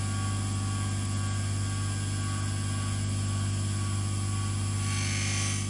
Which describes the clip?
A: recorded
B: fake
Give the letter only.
A